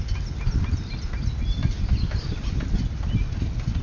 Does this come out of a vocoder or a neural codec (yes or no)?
no